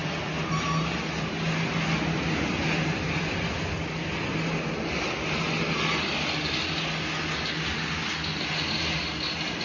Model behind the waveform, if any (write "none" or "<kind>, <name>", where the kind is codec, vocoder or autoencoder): none